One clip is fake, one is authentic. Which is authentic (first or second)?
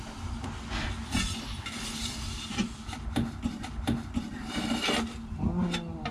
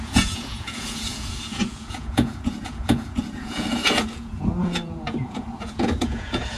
first